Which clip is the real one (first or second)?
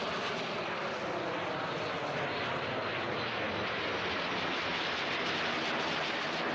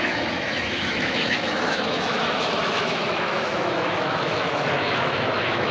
first